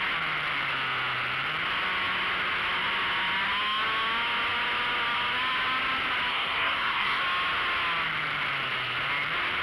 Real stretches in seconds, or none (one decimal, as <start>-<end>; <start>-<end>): 0.0-6.3; 7.2-9.6